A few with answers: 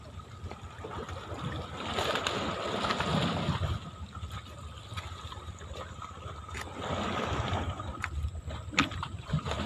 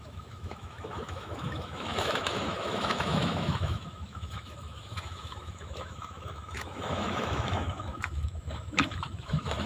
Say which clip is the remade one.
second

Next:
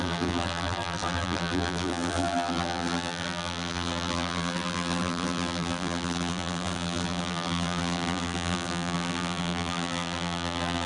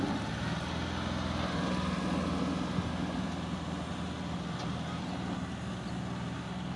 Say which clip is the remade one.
first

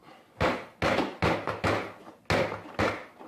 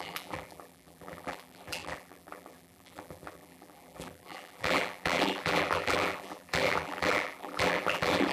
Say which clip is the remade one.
second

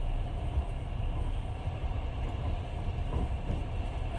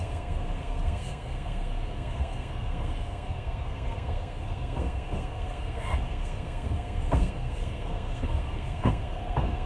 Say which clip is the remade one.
second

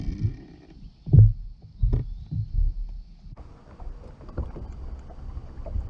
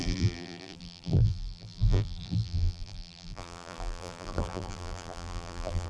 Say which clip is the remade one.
second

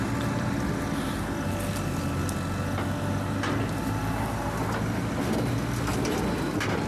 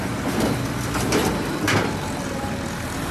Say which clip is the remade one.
second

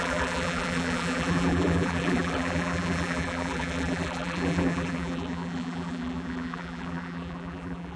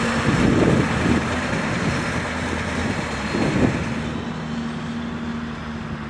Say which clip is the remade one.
first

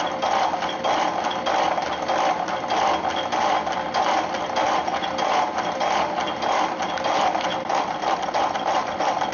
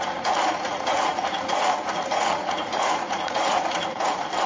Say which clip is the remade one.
second